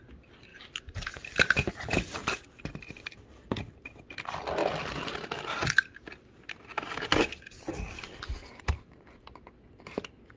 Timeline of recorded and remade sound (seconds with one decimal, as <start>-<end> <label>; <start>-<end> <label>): 0.0-0.5 recorded; 0.5-1.7 remade; 1.7-10.4 recorded